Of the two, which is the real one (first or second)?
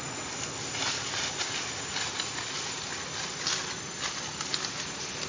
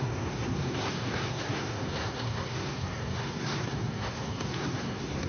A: first